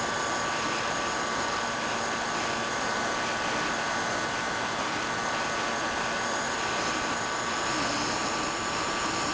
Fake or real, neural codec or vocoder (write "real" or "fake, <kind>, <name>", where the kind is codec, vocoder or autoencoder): real